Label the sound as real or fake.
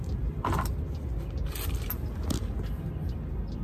real